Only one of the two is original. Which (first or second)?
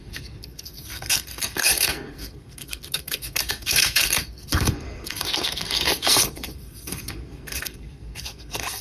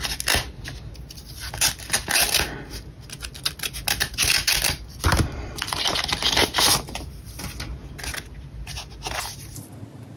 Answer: second